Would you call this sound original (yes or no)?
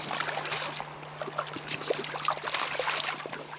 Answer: yes